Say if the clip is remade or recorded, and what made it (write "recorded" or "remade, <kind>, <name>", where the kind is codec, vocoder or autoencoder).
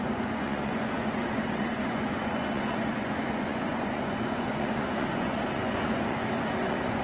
remade, vocoder, Vocos